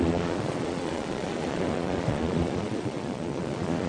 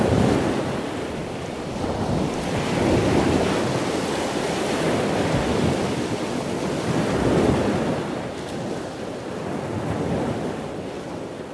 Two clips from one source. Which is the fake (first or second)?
first